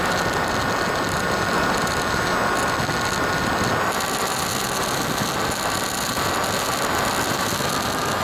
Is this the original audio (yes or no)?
yes